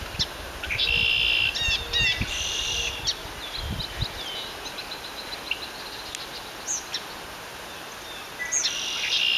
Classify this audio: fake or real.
real